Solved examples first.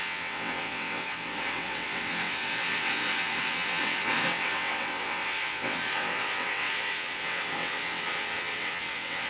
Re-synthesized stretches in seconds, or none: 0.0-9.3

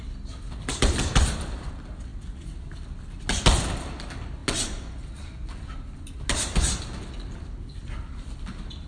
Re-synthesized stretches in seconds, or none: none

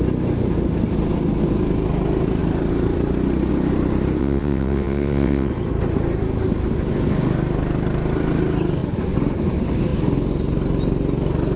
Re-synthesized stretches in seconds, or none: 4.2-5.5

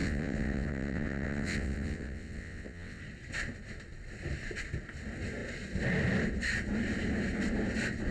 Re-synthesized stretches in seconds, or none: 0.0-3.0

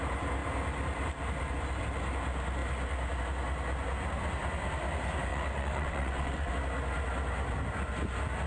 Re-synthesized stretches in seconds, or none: 5.3-6.5

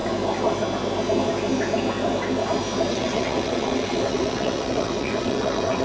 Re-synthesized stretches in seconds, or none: 2.9-5.8